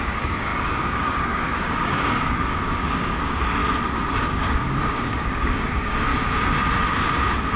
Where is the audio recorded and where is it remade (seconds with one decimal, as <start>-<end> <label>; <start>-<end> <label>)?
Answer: 0.0-3.6 remade; 3.6-4.1 recorded; 4.1-6.1 remade; 6.1-7.6 recorded